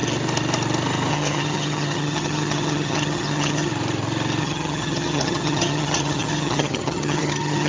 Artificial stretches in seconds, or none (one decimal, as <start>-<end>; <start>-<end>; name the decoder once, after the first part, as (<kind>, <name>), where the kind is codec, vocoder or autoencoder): 1.1-3.7 (vocoder, HiFi-GAN); 4.4-7.7